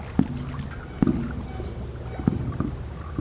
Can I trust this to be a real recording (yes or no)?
yes